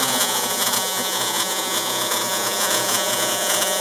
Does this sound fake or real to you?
fake